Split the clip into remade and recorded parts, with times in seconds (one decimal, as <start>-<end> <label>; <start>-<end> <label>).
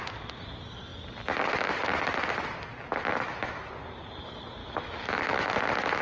0.0-3.1 recorded; 3.1-3.7 remade; 3.7-4.6 recorded; 4.6-5.5 remade; 5.5-6.0 recorded